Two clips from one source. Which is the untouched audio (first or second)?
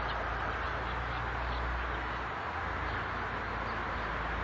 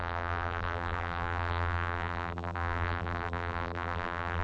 first